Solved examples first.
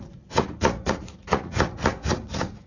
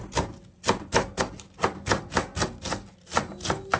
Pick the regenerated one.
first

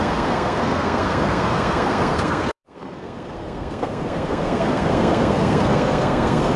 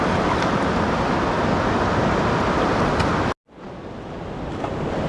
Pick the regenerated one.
first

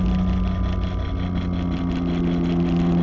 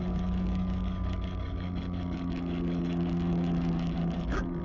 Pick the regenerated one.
second